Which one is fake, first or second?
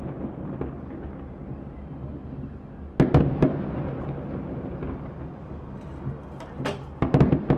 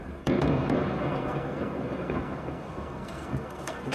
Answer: second